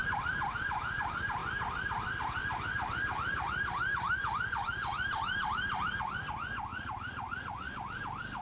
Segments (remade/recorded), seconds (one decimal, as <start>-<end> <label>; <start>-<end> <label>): 0.0-6.7 recorded; 6.7-8.0 remade; 8.0-8.4 recorded